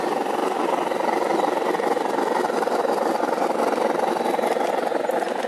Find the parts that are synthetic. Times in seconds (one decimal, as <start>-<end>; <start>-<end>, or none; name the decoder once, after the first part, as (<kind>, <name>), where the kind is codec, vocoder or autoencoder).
none